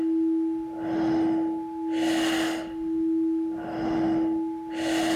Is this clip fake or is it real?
real